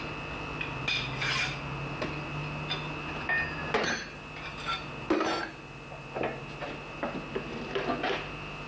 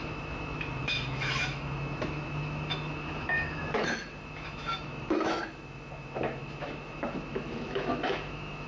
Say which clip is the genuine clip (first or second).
first